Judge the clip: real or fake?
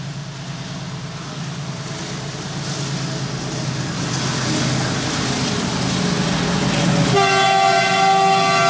real